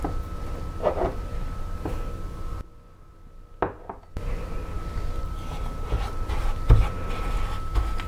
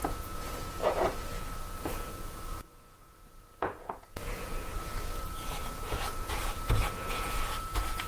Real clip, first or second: first